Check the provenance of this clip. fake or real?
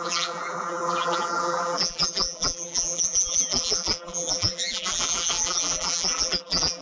fake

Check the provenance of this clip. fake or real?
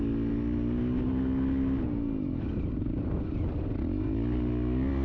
real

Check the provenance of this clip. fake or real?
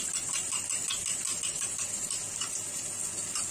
real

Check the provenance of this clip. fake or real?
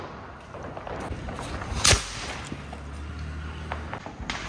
real